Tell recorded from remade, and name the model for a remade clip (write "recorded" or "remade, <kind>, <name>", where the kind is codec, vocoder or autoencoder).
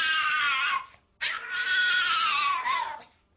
recorded